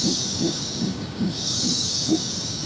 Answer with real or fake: fake